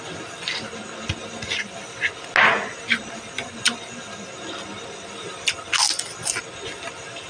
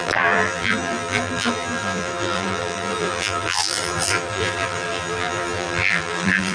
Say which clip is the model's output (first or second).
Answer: second